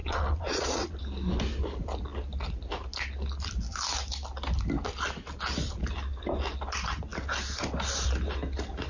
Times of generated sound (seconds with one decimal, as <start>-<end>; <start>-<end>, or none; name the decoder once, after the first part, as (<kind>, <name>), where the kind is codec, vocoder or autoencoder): 0.0-1.0 (vocoder, Vocos)